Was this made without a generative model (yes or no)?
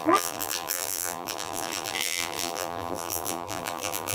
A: no